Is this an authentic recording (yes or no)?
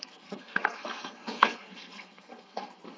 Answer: no